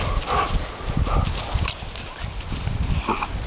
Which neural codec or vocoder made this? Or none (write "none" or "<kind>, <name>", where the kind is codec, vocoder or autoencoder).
none